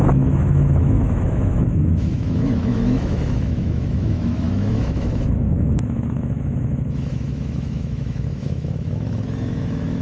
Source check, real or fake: fake